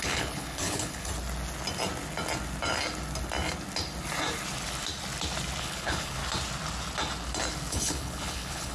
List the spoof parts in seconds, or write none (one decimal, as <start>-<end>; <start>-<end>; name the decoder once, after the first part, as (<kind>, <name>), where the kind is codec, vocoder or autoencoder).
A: 0.0-1.1 (codec, HILCodec); 5.6-6.2; 7.7-8.7